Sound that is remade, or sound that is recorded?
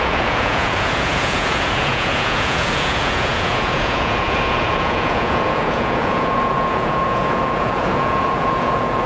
remade